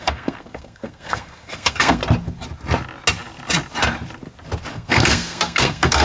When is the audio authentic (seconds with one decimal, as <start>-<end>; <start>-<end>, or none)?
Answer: 2.0-4.7